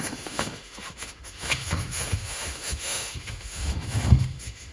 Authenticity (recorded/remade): remade